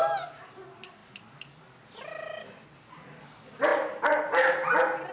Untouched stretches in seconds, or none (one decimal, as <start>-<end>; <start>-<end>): 0.0-5.1